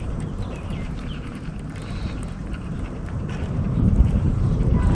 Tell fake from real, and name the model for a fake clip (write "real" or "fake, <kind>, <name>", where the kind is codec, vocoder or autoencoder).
fake, vocoder, BigVGAN v2